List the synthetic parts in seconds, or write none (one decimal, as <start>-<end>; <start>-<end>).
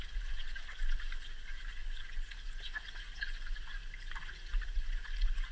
none